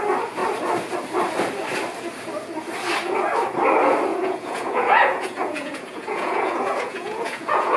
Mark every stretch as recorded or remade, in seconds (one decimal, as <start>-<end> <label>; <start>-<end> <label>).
0.0-4.1 recorded; 4.1-7.8 remade